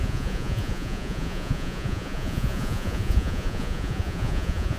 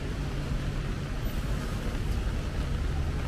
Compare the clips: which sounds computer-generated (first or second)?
first